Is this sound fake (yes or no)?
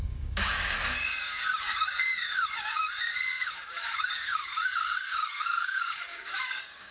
yes